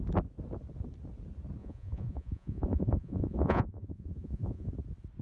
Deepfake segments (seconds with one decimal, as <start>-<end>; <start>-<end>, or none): 1.6-4.7